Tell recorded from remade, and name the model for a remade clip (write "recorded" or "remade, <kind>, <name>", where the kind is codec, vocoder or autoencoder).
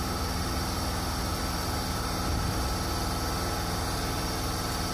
recorded